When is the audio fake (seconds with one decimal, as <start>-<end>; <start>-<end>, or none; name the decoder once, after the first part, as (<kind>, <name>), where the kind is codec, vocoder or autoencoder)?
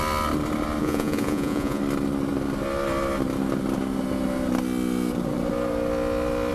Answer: 0.8-1.8 (vocoder, Vocos)